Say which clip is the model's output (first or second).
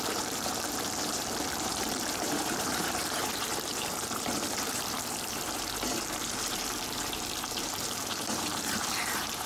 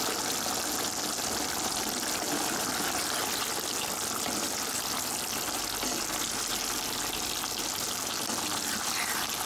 first